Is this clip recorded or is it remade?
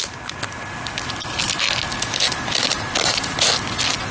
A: recorded